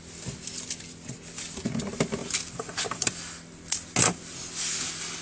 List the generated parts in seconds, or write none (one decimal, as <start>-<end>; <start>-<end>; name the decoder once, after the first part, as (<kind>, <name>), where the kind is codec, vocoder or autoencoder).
none